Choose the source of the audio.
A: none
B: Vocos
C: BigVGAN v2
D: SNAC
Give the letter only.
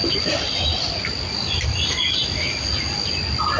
A